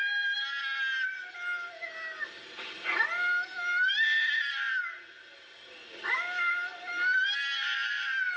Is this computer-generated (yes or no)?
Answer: no